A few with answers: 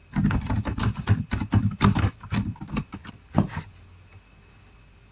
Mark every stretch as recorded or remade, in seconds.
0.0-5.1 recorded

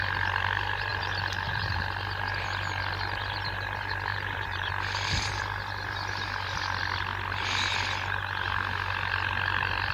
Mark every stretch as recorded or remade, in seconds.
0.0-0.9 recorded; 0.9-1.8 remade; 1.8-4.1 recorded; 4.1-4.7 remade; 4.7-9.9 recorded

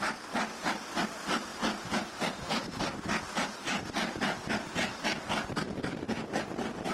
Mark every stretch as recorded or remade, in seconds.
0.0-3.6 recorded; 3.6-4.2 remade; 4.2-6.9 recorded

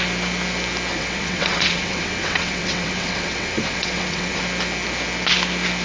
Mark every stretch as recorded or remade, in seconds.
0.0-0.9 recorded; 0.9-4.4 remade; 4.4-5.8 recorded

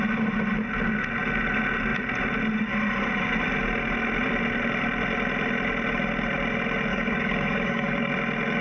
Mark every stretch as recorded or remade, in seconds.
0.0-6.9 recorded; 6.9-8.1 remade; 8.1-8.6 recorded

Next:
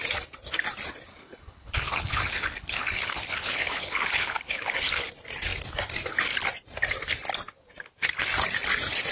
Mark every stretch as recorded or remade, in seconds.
0.0-1.1 recorded; 1.1-5.1 remade; 5.1-9.1 recorded

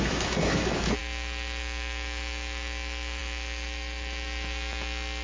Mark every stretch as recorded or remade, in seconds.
0.0-5.2 remade

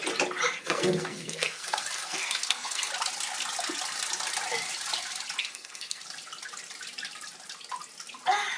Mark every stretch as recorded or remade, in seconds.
0.0-0.6 recorded; 0.6-2.9 remade; 2.9-5.4 recorded; 5.4-6.0 remade; 6.0-8.6 recorded